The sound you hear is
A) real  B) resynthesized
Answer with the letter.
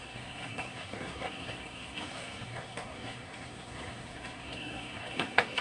B